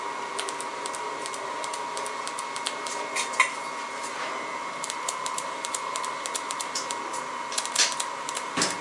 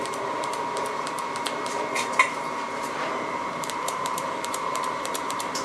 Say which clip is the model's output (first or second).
second